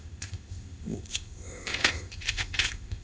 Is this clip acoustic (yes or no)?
no